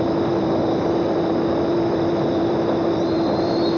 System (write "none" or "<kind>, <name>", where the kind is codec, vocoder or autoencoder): vocoder, BigVGAN v2